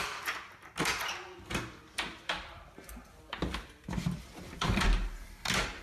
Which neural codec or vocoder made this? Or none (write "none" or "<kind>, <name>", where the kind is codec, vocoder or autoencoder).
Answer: vocoder, BigVGAN v2